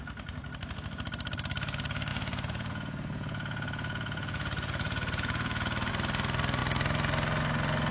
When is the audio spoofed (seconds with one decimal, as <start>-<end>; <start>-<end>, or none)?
2.1-5.9